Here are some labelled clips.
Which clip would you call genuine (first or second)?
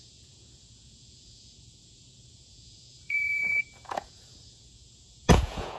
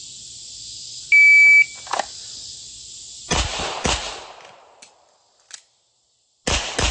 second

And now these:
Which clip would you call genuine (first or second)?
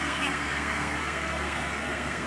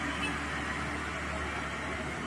second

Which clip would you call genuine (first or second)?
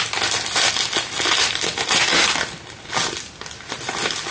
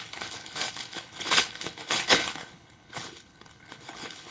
first